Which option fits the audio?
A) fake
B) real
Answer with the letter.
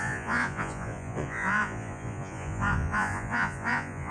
A